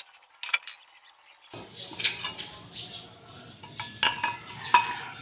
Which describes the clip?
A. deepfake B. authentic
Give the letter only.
B